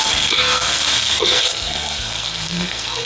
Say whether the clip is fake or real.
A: fake